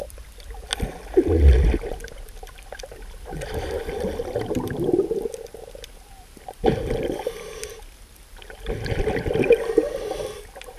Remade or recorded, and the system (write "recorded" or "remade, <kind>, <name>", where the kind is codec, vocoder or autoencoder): recorded